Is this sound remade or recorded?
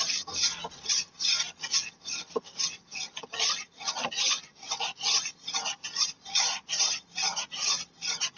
recorded